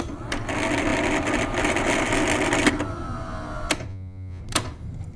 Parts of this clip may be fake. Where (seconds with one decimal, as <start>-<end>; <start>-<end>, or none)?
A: 3.9-4.4